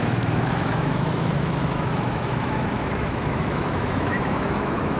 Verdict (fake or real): fake